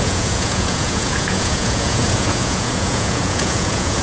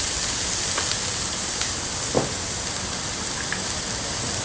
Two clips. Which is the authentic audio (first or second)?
second